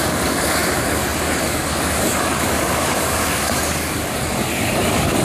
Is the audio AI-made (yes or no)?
yes